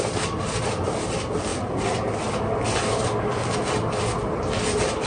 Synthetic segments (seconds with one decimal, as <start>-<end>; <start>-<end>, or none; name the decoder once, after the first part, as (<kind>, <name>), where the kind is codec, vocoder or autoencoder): none